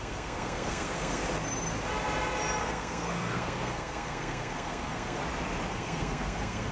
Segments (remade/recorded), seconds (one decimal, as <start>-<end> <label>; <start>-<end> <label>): 0.0-1.2 remade; 1.2-2.6 recorded; 2.6-5.2 remade; 5.2-5.7 recorded; 5.7-6.7 remade